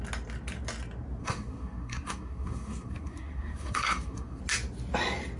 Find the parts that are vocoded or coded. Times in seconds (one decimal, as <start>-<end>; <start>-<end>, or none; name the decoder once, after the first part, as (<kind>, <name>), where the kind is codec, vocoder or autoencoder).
1.2-4.4 (codec, SNAC)